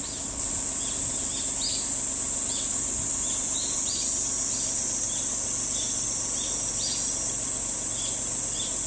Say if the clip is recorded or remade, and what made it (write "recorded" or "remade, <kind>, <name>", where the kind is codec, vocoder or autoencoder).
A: recorded